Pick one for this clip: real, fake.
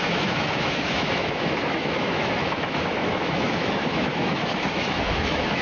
fake